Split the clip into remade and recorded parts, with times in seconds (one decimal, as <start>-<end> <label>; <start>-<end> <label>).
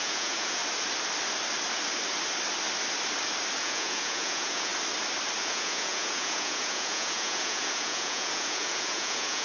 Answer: 0.0-0.6 remade; 0.6-3.6 recorded; 3.6-4.7 remade; 4.7-5.4 recorded; 5.4-9.4 remade